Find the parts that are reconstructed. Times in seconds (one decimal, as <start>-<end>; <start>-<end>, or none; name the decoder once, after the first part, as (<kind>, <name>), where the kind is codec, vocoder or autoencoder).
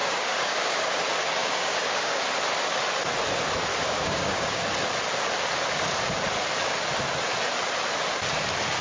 0.0-1.0 (codec, DAC); 1.4-2.2; 3.7-4.6